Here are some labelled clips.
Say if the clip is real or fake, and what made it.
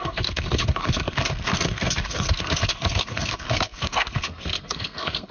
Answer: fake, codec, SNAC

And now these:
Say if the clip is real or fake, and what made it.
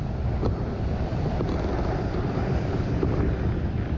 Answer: real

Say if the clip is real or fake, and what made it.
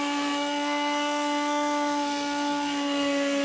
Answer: fake, codec, SNAC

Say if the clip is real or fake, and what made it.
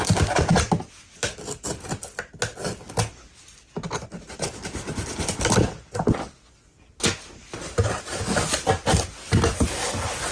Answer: real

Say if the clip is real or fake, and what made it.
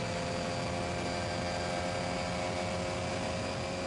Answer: real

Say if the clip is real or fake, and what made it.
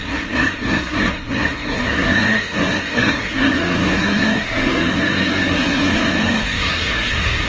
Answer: fake, codec, SNAC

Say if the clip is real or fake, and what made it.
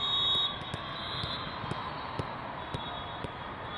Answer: real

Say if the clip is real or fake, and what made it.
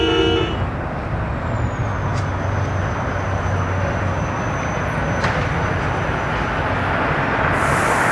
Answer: real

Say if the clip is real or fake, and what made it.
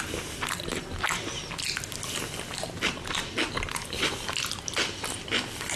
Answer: real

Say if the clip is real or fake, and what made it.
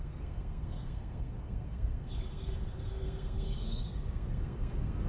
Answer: fake, codec, SNAC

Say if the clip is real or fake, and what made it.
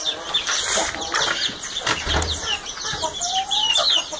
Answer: real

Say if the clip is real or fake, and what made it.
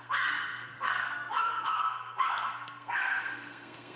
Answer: fake, codec, SNAC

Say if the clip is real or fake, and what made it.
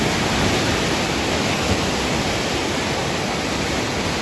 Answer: real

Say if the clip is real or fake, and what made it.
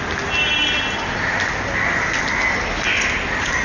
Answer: real